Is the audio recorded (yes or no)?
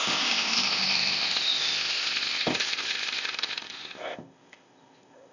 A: no